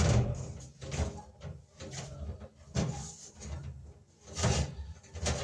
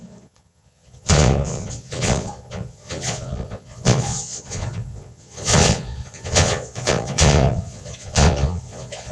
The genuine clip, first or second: first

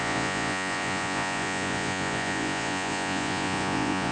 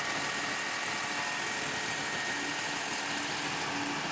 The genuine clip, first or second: second